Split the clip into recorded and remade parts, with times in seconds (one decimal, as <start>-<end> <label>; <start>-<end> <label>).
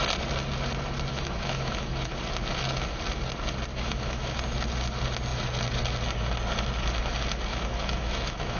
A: 0.0-1.1 recorded; 1.1-2.1 remade; 2.1-3.7 recorded; 3.7-4.4 remade; 4.4-7.5 recorded; 7.5-8.6 remade